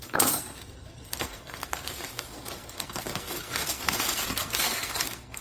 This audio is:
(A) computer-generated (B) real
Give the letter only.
A